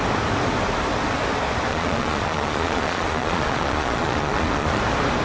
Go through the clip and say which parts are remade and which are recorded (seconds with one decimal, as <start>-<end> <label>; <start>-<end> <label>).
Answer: 0.0-1.7 recorded; 1.7-4.8 remade; 4.8-5.2 recorded